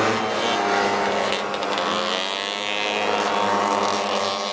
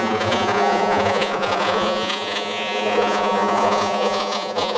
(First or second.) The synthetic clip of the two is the second